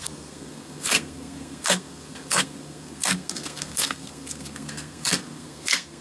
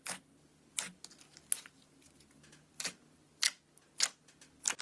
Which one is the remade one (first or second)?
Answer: first